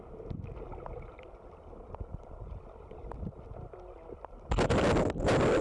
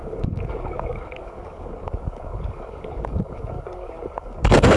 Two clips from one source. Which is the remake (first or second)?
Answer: second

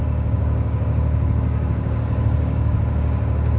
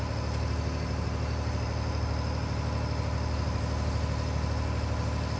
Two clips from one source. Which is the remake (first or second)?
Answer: first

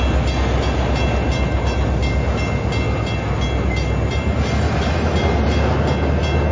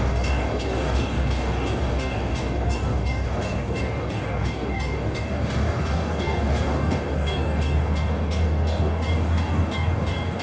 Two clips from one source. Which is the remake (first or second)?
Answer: second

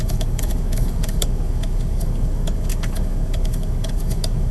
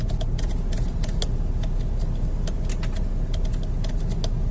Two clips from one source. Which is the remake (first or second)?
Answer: first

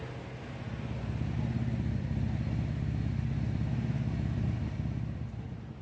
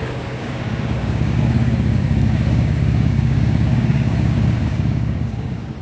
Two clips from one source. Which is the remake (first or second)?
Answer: second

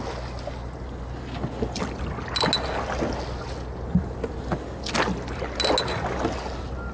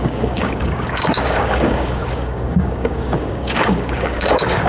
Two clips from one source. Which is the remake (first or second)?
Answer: second